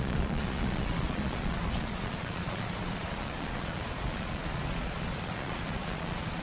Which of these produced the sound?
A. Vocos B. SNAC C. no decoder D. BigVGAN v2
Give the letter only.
A